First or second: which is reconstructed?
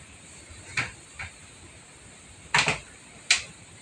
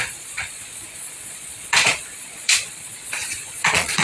second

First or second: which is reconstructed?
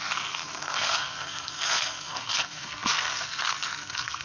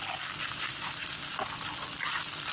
first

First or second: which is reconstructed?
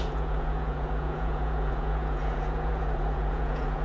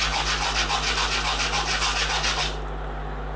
first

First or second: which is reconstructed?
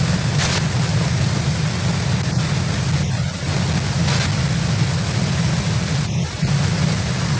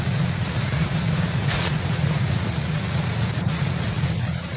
second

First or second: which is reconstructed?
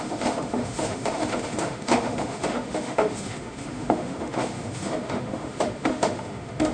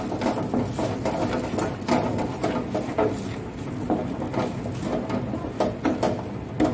first